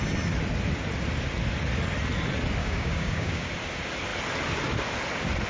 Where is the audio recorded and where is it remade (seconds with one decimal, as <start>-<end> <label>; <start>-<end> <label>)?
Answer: 0.0-2.6 recorded; 2.6-3.5 remade; 3.5-5.5 recorded